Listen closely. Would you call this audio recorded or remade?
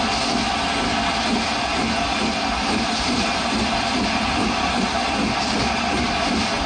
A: recorded